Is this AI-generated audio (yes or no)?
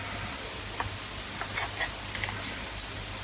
no